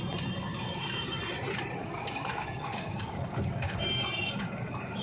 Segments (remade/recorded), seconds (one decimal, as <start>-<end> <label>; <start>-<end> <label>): 0.0-0.5 recorded; 0.5-1.2 remade; 1.2-1.8 recorded; 1.8-5.0 remade